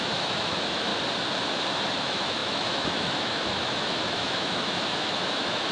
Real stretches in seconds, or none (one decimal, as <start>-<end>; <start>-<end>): 0.9-2.0